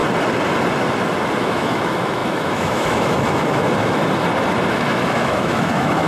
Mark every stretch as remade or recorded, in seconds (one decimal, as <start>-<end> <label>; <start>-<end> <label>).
0.0-1.4 recorded; 1.4-4.0 remade; 4.0-4.7 recorded; 4.7-6.1 remade